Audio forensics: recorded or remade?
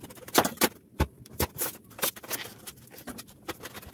remade